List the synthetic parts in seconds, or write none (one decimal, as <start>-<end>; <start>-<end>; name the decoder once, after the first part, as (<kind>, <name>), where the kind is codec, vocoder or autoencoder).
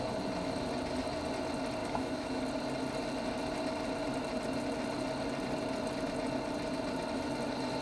1.8-2.4 (autoencoder, DAC-VAE)